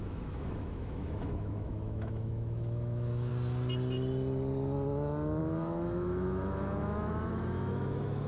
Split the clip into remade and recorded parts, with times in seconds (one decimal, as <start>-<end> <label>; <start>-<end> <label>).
0.0-3.3 remade; 3.3-5.4 recorded; 5.4-8.3 remade